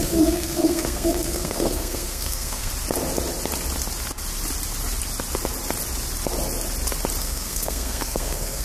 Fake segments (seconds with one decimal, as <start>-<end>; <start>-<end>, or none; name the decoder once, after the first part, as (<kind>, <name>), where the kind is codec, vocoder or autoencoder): 0.0-2.7 (codec, SNAC); 7.2-8.6